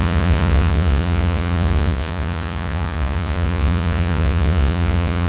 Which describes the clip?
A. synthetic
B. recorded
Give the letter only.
A